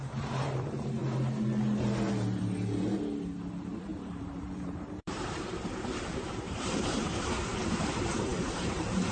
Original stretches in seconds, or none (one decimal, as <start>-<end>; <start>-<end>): 1.0-3.5